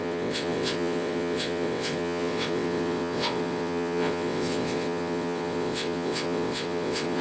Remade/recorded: remade